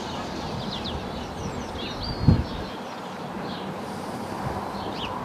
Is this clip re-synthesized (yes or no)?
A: no